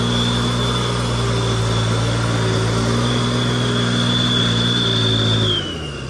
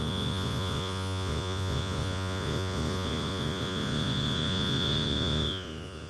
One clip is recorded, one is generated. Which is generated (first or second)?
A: second